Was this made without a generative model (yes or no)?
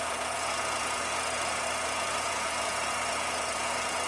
no